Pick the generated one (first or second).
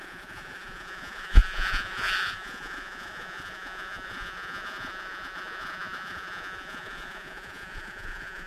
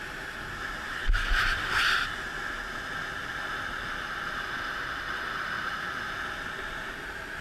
first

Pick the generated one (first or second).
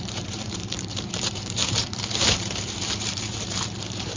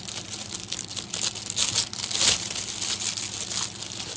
first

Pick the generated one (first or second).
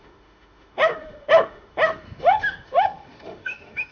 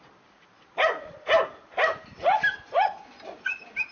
first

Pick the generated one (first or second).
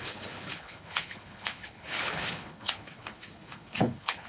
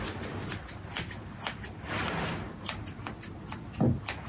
first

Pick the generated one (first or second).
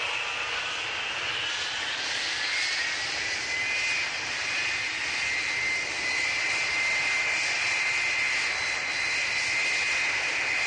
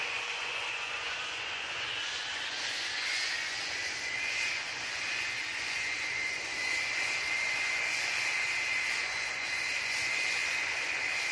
second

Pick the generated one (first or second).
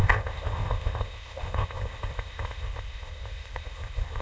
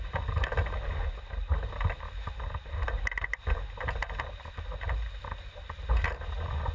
first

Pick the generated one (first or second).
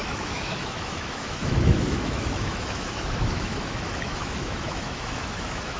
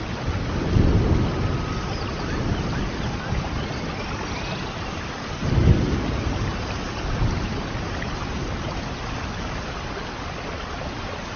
first